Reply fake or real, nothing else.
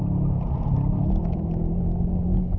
real